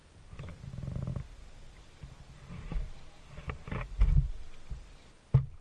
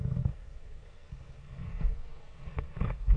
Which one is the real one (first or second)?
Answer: first